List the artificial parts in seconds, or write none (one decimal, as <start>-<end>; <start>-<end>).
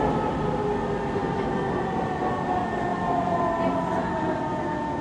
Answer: none